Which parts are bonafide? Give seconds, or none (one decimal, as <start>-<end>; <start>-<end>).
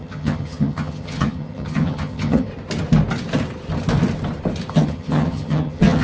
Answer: 2.5-4.7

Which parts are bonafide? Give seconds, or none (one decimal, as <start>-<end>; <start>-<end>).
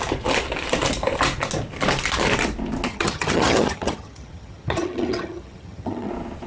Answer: 0.0-2.9; 6.1-6.5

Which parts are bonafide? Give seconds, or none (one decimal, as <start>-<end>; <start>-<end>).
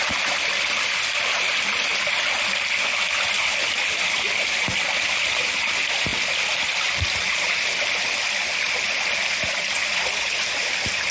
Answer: 0.0-11.1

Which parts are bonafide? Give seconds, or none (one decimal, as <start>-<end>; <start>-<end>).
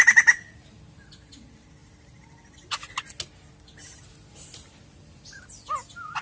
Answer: 0.0-6.2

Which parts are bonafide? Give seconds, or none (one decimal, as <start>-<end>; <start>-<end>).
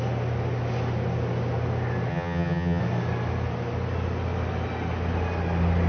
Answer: 0.0-2.1; 2.8-5.9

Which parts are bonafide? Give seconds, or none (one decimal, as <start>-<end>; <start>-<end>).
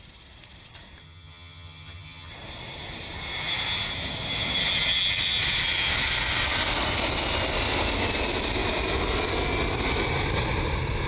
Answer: 0.0-1.0; 2.3-11.1